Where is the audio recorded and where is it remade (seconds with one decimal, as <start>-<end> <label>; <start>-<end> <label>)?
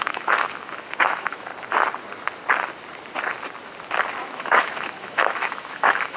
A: 0.0-1.5 remade; 1.5-4.2 recorded; 4.2-6.2 remade